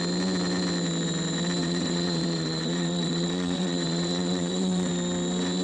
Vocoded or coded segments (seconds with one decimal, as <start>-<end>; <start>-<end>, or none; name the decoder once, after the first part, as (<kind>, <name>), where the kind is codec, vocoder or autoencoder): 1.6-4.9 (vocoder, WaveNeXt)